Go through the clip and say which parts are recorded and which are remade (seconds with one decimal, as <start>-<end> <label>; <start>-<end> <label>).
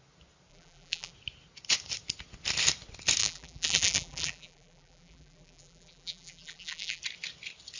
0.0-0.5 recorded; 0.5-1.1 remade; 1.1-3.2 recorded; 3.2-7.0 remade; 7.0-7.8 recorded